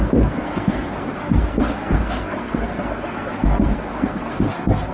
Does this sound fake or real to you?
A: fake